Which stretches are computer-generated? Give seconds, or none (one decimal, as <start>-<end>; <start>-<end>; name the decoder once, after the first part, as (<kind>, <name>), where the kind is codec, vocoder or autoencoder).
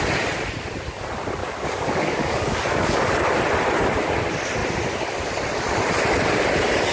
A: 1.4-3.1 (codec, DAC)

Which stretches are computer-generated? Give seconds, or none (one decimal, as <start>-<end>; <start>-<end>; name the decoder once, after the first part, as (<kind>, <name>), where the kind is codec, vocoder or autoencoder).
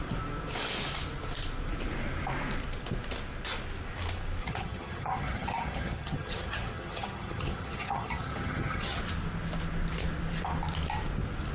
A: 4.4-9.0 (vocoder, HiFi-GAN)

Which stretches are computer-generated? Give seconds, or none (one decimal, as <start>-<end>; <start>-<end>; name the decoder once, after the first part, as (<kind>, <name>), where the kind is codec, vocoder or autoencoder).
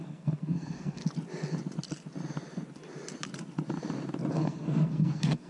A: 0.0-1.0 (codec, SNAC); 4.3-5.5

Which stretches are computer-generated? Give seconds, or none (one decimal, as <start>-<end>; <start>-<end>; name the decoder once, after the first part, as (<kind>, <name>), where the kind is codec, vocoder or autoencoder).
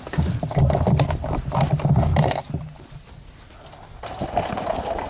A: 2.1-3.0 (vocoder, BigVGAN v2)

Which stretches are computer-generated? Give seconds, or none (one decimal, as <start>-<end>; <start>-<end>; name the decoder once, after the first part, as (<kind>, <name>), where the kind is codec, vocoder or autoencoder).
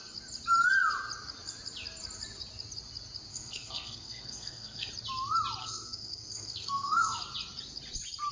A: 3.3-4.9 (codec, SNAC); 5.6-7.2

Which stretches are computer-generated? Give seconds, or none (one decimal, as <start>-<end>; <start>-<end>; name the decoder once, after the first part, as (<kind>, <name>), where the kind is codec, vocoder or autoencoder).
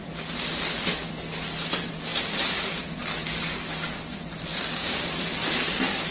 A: 4.5-5.0 (codec, DAC)